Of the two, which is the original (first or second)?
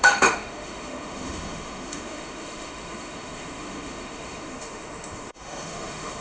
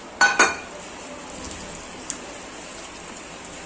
second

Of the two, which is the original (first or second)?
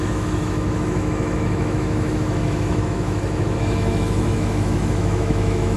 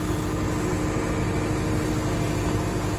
second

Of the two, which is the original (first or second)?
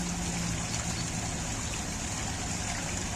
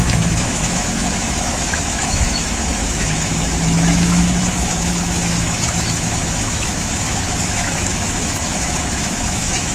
first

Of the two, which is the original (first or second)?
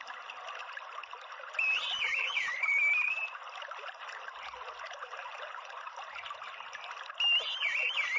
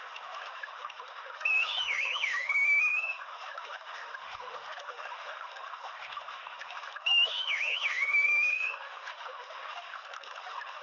first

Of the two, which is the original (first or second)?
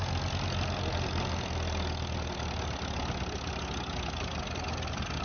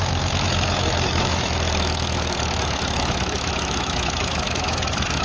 first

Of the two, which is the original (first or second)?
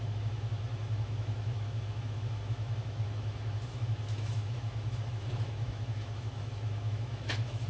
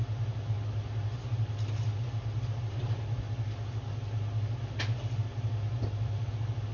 second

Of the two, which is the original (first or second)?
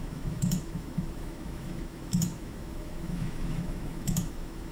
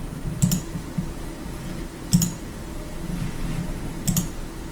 second